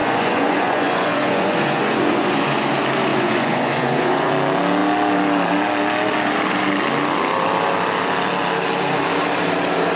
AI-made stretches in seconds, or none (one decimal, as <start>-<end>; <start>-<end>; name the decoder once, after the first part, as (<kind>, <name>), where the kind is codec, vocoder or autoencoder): 0.0-2.7 (vocoder, Vocos); 3.1-4.3

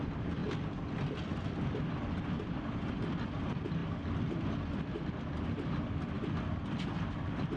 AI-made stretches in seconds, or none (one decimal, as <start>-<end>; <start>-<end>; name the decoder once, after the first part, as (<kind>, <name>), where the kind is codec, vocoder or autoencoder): none

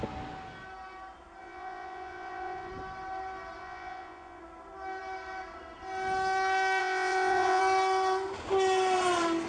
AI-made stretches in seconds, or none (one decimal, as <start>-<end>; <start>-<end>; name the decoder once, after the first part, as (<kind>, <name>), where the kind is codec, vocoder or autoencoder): 1.4-2.7 (vocoder, Vocos); 3.6-4.4; 6.8-7.6